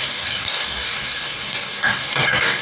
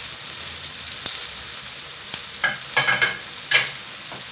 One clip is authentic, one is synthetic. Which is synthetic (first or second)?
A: first